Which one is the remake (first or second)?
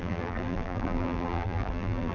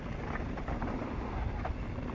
first